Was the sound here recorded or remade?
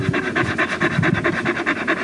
recorded